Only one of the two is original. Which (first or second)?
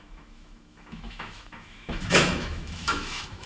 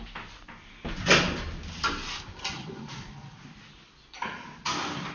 second